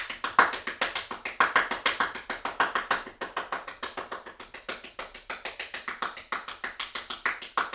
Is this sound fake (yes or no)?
no